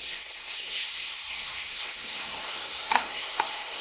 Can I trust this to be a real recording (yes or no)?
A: no